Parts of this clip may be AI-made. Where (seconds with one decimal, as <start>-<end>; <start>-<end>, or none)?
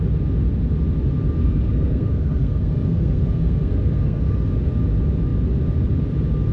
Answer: 1.4-4.5